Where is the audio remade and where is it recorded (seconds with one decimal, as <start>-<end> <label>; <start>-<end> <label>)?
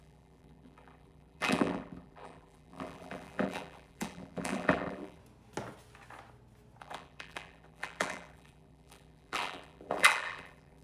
0.0-5.2 remade; 5.2-6.8 recorded; 6.8-10.8 remade